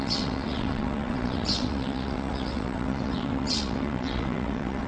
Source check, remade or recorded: remade